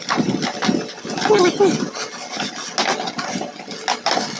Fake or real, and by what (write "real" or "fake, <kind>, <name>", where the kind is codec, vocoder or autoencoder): real